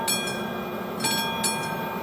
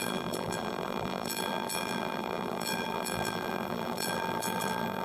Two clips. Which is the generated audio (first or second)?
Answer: second